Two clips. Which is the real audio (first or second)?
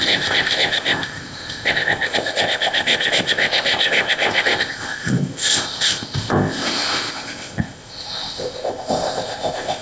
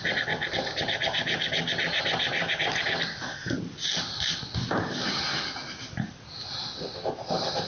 second